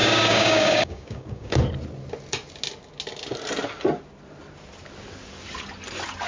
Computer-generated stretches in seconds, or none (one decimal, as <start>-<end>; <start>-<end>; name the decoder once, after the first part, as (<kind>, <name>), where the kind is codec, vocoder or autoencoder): 0.0-1.6 (codec, DAC)